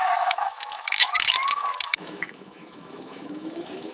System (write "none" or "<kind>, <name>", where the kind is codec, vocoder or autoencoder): autoencoder, DAC-VAE